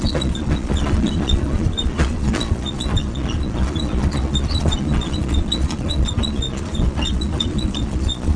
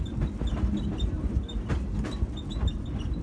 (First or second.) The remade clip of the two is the first